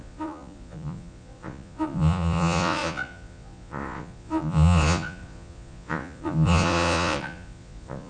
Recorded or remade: remade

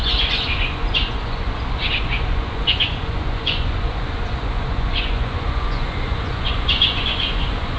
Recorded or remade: remade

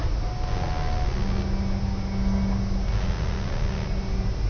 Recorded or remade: recorded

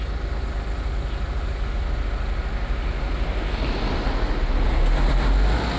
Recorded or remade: recorded